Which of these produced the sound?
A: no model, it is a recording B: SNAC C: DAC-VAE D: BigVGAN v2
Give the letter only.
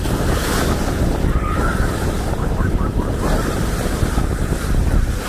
A